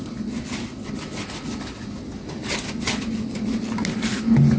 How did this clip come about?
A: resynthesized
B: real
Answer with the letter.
B